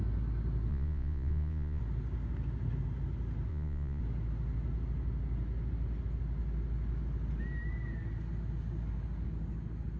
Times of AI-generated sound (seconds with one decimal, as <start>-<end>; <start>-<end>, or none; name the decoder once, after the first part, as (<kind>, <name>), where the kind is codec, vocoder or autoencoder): 0.7-1.8 (vocoder, Vocos); 3.5-4.0

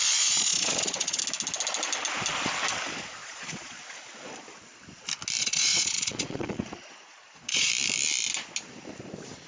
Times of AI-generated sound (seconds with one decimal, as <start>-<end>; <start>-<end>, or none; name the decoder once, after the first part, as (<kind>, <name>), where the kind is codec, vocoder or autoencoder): 0.0-1.2 (vocoder, Vocos); 3.2-3.8; 5.4-7.7

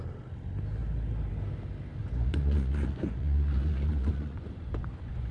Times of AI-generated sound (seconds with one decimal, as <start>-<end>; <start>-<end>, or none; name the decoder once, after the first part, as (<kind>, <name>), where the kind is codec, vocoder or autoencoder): 2.0-5.3 (vocoder, Vocos)

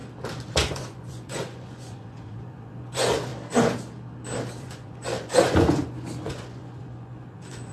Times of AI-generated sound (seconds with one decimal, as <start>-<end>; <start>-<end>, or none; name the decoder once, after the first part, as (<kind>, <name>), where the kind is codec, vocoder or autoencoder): 0.5-3.3 (vocoder, Vocos); 4.6-7.7

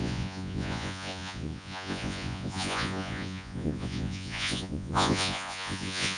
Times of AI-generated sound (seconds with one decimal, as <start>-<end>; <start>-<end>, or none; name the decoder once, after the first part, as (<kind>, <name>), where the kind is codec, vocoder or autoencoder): 0.0-6.2 (vocoder, Vocos)